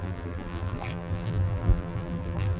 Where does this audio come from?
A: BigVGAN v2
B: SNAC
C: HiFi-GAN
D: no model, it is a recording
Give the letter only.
A